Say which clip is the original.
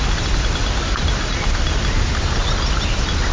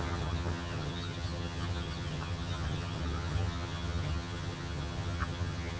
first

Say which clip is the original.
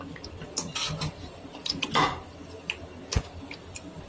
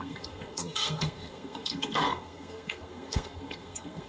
first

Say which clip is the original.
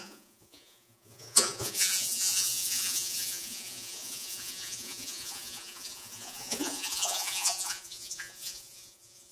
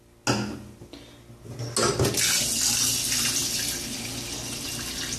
second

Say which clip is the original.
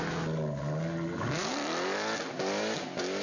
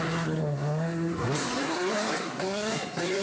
first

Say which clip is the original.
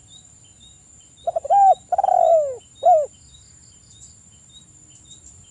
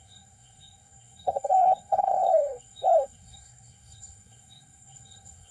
first